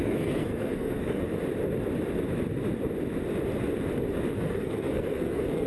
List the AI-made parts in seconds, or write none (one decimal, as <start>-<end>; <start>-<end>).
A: 0.0-1.3; 4.3-5.7